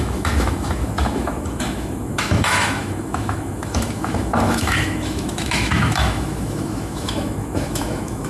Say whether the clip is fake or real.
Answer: fake